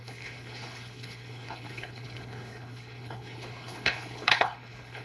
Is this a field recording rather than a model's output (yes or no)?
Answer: no